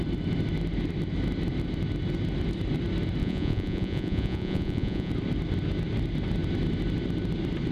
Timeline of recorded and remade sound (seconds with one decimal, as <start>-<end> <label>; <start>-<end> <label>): 0.0-3.2 recorded; 3.2-5.1 remade; 5.1-7.7 recorded